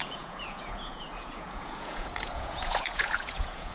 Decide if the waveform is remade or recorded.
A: remade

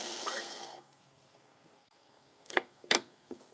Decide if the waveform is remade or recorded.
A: remade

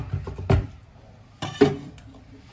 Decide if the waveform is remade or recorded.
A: recorded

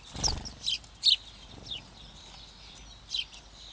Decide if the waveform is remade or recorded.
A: recorded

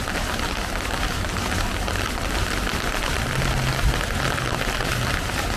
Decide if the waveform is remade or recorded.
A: recorded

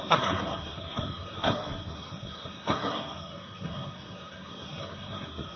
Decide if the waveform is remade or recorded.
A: remade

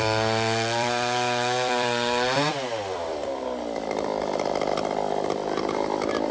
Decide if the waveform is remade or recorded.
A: remade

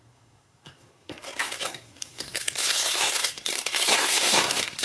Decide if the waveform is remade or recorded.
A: remade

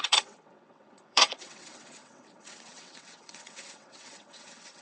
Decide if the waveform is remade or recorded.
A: remade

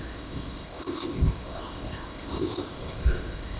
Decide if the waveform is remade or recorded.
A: remade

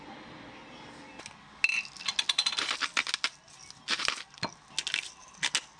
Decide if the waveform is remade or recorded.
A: recorded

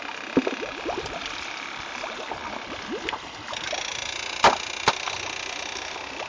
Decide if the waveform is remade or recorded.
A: recorded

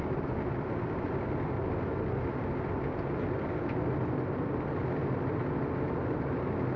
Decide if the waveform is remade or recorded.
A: recorded